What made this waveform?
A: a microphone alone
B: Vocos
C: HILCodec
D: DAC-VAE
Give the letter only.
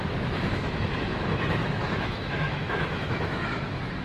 D